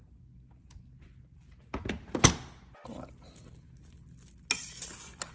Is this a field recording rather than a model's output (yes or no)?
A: yes